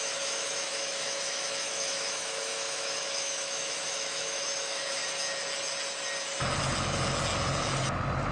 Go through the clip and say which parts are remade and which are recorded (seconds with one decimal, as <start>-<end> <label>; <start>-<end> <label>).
0.0-5.0 remade; 5.0-8.3 recorded